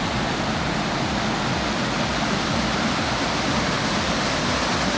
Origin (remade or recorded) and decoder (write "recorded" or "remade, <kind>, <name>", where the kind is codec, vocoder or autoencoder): recorded